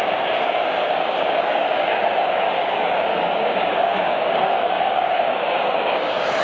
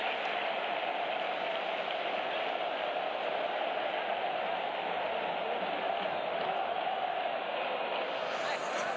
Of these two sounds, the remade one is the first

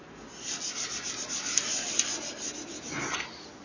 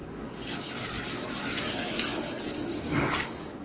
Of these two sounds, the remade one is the second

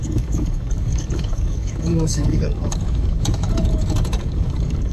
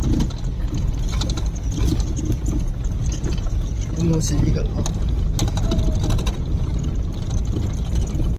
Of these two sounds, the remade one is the first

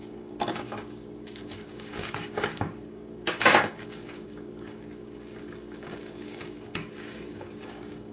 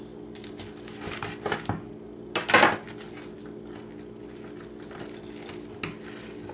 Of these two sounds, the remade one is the first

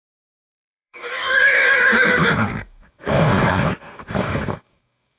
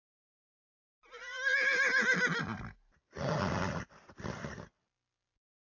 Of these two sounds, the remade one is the first